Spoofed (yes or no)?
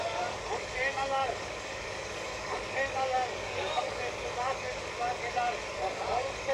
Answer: yes